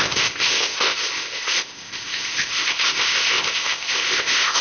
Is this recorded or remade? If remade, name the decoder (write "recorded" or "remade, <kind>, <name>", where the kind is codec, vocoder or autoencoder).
remade, codec, ZipCodec